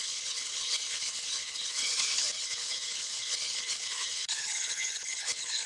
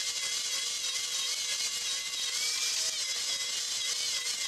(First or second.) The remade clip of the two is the first